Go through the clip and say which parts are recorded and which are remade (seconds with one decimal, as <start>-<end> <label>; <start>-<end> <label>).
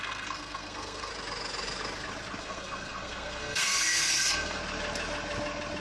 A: 0.0-1.1 remade; 1.1-2.4 recorded; 2.4-4.6 remade; 4.6-5.8 recorded